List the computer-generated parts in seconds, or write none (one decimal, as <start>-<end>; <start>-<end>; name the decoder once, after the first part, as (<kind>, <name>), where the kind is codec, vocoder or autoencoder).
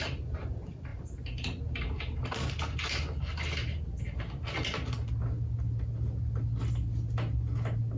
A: none